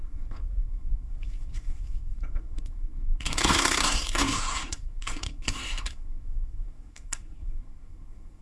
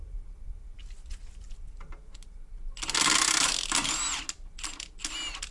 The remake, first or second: first